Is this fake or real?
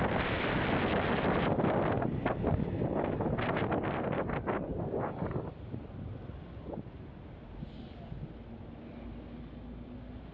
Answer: real